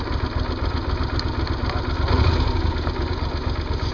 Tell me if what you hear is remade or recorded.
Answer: recorded